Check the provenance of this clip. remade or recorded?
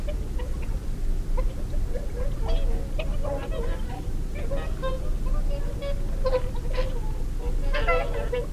recorded